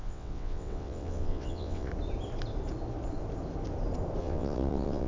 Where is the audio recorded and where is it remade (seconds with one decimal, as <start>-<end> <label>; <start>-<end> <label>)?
0.0-1.9 remade; 1.9-4.2 recorded; 4.2-5.1 remade